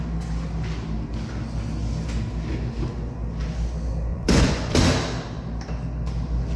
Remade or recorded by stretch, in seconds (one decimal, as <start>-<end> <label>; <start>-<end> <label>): 0.0-4.1 recorded; 4.1-4.7 remade; 4.7-6.6 recorded

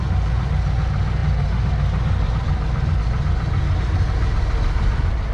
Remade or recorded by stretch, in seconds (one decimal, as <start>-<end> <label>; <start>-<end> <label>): 0.0-5.3 recorded

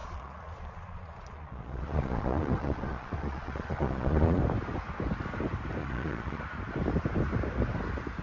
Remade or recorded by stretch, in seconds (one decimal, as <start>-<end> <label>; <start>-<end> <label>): 0.0-4.4 remade; 4.4-5.8 recorded; 5.8-6.4 remade; 6.4-8.2 recorded

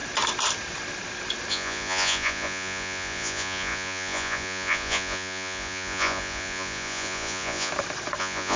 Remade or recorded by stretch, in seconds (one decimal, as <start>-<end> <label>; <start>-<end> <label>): 0.0-1.5 recorded; 1.5-7.7 remade; 7.7-8.2 recorded; 8.2-8.6 remade

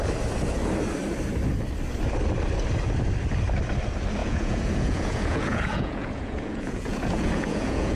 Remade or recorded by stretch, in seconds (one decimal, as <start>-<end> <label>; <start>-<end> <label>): 0.0-4.2 recorded; 4.2-8.0 remade

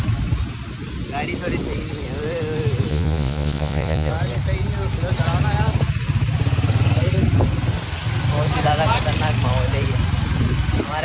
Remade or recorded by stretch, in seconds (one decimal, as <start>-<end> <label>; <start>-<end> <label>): 0.0-2.9 recorded; 2.9-4.1 remade; 4.1-11.0 recorded